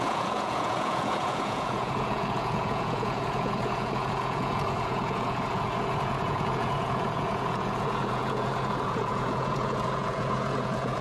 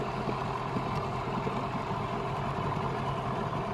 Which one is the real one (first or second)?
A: second